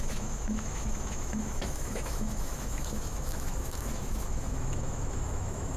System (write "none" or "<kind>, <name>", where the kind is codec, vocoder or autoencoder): autoencoder, DAC-VAE